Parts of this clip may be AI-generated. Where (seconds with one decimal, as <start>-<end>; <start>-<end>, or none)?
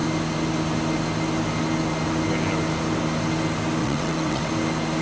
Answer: 3.8-4.5